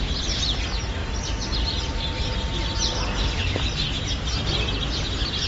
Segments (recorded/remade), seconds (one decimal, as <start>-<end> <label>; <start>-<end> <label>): 0.0-5.5 recorded